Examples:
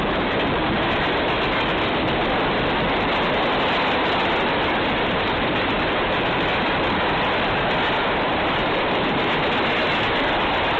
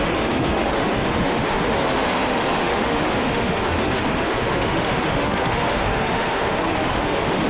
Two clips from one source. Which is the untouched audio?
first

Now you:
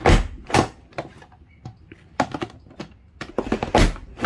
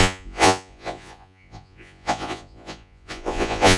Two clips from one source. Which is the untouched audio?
first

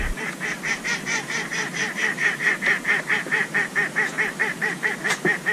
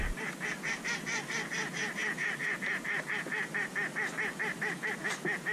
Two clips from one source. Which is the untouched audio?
second